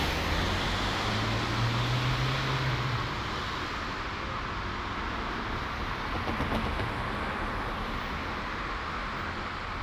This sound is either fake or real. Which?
real